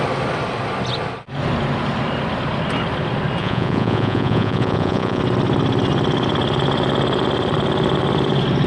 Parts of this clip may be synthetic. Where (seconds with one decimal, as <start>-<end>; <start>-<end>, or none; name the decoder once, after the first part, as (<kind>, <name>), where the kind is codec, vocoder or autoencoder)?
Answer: 3.4-5.2 (vocoder, Vocos)